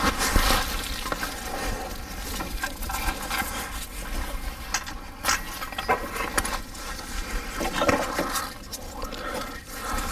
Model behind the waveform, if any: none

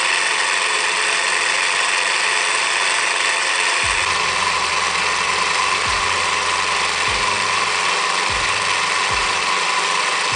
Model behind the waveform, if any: none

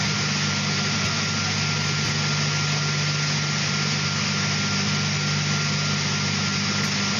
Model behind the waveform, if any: none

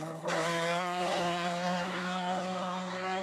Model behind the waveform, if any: codec, SNAC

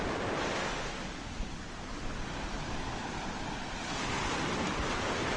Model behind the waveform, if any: none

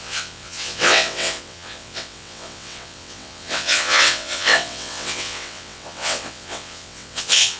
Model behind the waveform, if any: vocoder, WaveNeXt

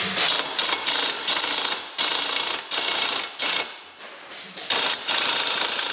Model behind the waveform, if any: none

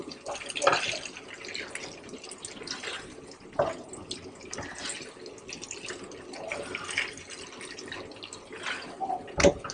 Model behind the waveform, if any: none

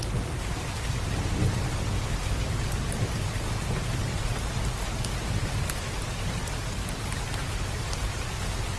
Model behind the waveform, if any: none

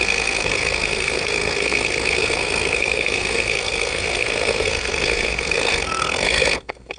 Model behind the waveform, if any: codec, SNAC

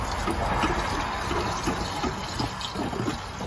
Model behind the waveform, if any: none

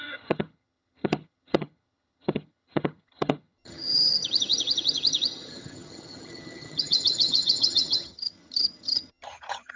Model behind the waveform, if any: vocoder, HiFi-GAN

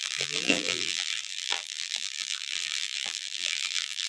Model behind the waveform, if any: vocoder, BigVGAN v2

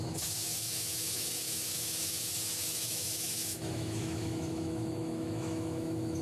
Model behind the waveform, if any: autoencoder, DAC-VAE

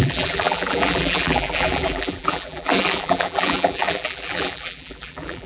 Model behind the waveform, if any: vocoder, BigVGAN v2